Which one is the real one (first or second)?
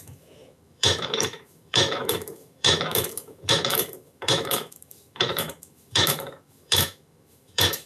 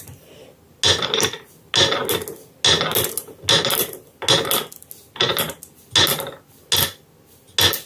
second